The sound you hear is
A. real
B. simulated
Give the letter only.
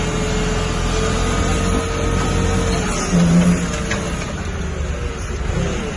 A